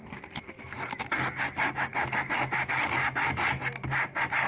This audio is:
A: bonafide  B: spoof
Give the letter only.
A